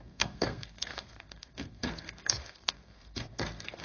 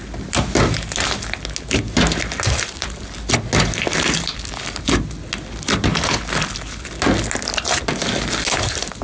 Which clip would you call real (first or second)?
second